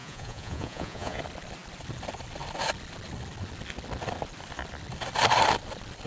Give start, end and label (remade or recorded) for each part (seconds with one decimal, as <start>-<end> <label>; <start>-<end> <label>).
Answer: 0.0-1.2 remade; 1.2-6.1 recorded